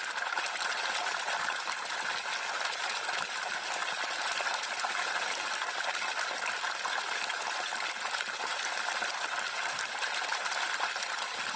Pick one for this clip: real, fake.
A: real